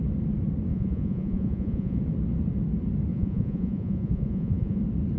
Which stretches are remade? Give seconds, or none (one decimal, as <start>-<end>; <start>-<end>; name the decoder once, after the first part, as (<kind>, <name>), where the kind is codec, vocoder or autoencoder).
0.7-2.0 (vocoder, Vocos); 3.1-4.8